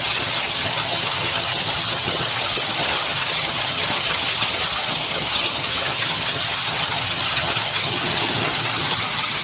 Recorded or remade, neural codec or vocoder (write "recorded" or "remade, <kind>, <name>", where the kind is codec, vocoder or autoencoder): remade, vocoder, HiFi-GAN